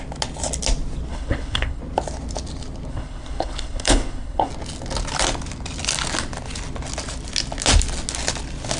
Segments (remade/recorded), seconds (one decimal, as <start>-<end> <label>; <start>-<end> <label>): 0.0-1.1 recorded; 1.1-1.8 remade; 1.8-2.9 recorded; 2.9-4.5 remade; 4.5-8.8 recorded